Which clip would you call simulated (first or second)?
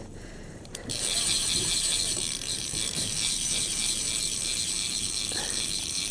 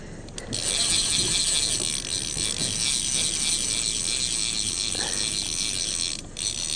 first